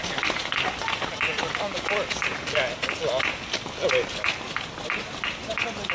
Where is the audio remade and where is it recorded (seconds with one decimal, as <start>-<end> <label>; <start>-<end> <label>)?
0.0-5.9 recorded